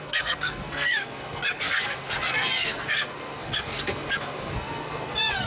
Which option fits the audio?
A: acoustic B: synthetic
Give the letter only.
B